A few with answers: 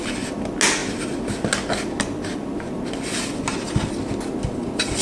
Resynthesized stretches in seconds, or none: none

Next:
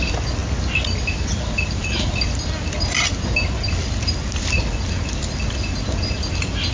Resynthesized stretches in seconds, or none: none

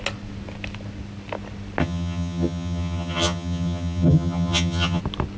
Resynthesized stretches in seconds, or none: 1.8-5.0 (vocoder, HiFi-GAN)

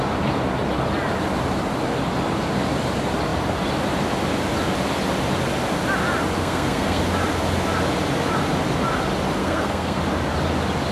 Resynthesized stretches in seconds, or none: 6.4-7.0 (codec, SNAC); 9.4-10.0

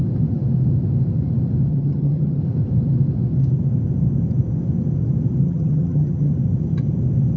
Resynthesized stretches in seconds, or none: 1.7-2.4 (vocoder, HiFi-GAN); 5.4-6.3

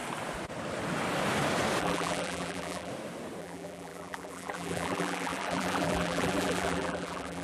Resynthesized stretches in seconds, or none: 1.8-2.9 (vocoder, BigVGAN v2); 3.4-7.4

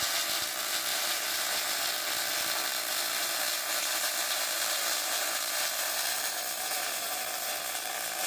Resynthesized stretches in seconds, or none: 0.9-1.8 (vocoder, BigVGAN v2); 2.9-7.9

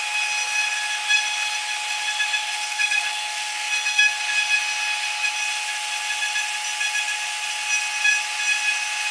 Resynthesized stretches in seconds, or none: 2.4-4.2 (codec, SNAC)